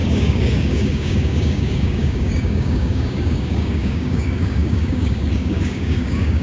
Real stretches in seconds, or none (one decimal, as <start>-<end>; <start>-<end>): none